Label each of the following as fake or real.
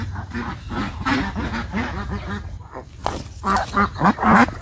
real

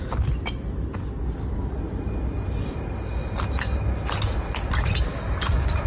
real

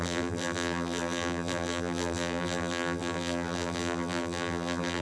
fake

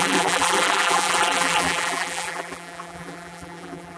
fake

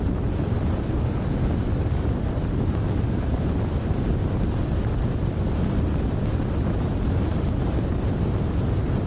real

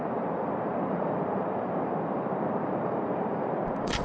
fake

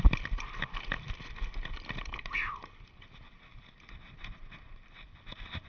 real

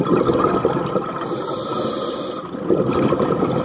fake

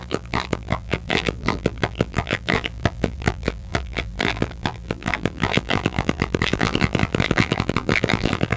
fake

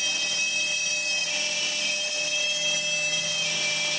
real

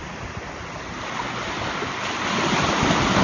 real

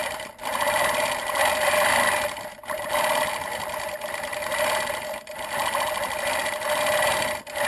real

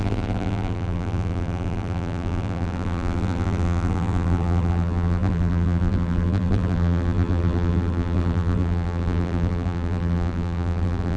fake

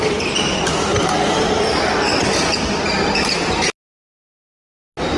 real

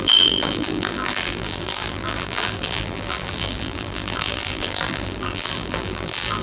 fake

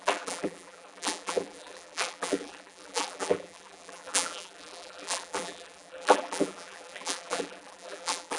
fake